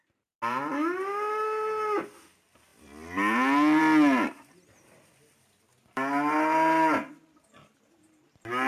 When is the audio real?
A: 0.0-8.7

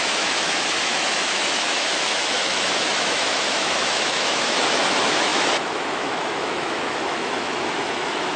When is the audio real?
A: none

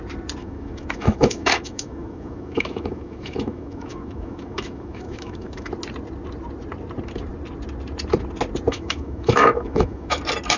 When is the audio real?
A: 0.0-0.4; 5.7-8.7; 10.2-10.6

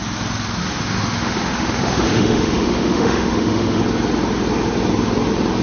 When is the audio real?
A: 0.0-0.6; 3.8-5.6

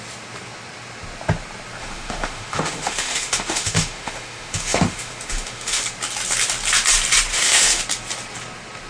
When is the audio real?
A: 0.0-1.8; 5.8-7.3; 7.8-8.9